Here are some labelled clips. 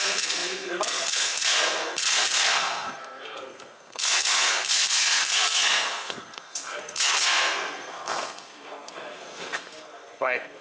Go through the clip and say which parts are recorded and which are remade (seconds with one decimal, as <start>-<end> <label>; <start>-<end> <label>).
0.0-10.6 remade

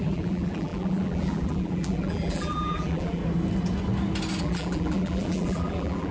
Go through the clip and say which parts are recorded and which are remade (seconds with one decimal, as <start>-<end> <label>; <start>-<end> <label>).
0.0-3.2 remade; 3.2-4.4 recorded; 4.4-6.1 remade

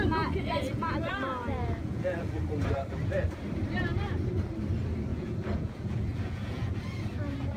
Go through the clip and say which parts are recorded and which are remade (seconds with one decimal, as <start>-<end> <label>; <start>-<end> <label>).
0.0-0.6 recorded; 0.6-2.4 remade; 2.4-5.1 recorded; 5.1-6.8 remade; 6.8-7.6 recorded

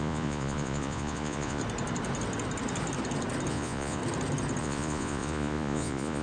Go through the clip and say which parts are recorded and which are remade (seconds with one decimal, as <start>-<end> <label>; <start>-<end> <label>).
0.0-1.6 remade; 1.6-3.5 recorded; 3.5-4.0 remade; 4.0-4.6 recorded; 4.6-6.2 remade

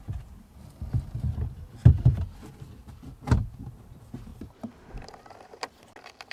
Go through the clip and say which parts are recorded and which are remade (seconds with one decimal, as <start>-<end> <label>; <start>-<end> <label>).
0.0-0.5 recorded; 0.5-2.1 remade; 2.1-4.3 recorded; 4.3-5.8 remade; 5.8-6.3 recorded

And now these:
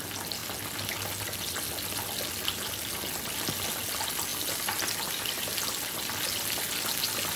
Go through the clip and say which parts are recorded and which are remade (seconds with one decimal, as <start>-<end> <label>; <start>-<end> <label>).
0.0-7.4 recorded